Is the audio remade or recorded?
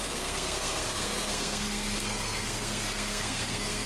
remade